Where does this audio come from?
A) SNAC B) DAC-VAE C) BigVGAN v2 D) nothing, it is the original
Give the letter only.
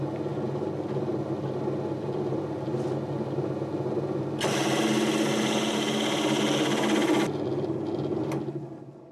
D